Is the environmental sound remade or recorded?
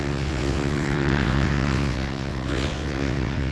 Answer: remade